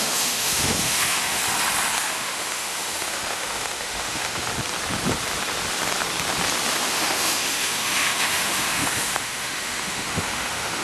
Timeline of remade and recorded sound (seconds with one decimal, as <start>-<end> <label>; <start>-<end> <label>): 0.0-1.4 remade; 1.4-2.0 recorded; 2.0-4.5 remade; 4.5-6.7 recorded; 6.7-10.8 remade